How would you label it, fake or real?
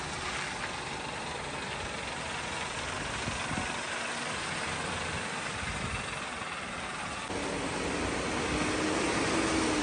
real